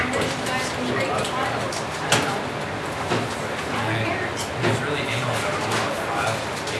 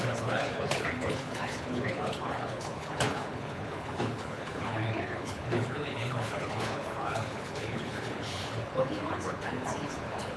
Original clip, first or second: first